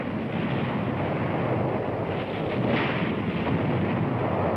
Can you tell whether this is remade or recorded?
recorded